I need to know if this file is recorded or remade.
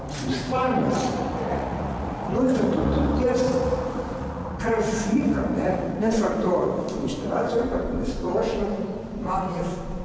remade